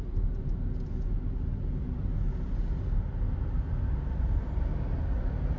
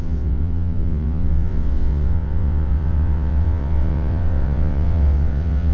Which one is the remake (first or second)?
second